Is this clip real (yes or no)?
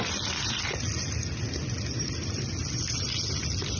yes